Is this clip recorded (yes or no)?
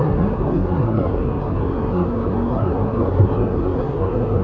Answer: no